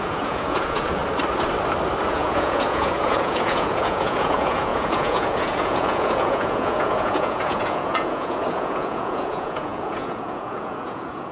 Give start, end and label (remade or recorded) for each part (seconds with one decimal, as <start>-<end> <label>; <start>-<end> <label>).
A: 0.0-1.0 remade; 1.0-2.1 recorded; 2.1-11.3 remade